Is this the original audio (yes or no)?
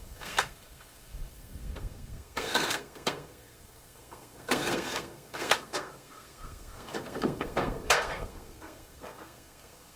no